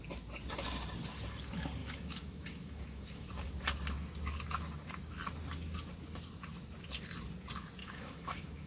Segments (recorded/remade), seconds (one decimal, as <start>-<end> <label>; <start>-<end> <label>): 0.0-1.8 recorded; 1.8-3.3 remade; 3.3-7.8 recorded; 7.8-8.7 remade

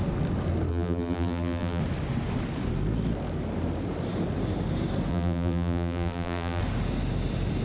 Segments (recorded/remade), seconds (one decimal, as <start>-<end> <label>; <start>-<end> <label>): 0.0-0.7 recorded; 0.7-1.8 remade; 1.8-5.1 recorded; 5.1-6.6 remade; 6.6-7.6 recorded

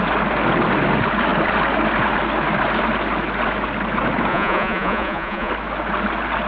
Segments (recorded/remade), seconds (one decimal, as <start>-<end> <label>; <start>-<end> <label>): 0.0-4.3 recorded; 4.3-5.5 remade; 5.5-6.5 recorded

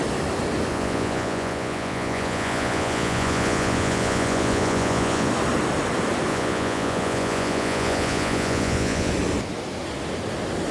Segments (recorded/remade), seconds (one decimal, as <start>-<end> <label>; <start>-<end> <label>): 0.0-0.7 recorded; 0.7-5.3 remade; 5.3-6.3 recorded; 6.3-9.1 remade; 9.1-10.7 recorded